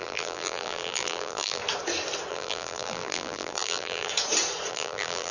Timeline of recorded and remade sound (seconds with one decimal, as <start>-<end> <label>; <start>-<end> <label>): 0.0-1.6 remade; 1.6-2.3 recorded; 2.3-4.1 remade; 4.1-4.7 recorded; 4.7-5.3 remade